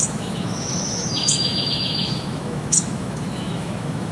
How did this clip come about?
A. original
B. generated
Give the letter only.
B